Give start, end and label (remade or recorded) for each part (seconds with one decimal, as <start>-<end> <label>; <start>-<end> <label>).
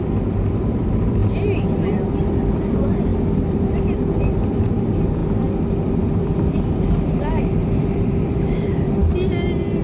0.0-1.2 remade; 1.2-1.8 recorded; 1.8-5.2 remade; 5.2-5.9 recorded; 5.9-9.0 remade; 9.0-9.8 recorded